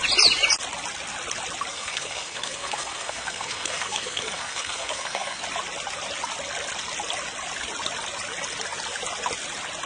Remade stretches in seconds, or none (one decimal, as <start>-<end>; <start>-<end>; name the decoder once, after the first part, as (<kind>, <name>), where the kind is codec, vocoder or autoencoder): 1.7-5.4 (codec, SNAC)